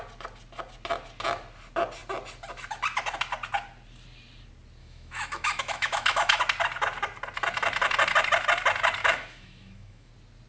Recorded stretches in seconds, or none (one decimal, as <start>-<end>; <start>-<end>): 0.0-4.8; 6.4-9.0; 10.1-10.5

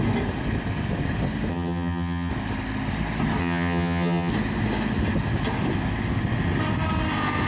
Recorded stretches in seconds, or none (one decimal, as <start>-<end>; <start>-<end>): 0.0-1.5; 2.3-3.4; 4.3-7.5